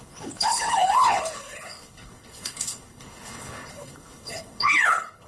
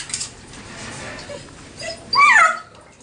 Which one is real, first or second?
second